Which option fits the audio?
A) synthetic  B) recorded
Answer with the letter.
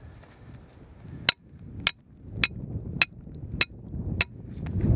B